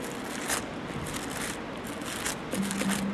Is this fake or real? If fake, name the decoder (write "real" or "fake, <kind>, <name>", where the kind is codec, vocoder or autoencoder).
real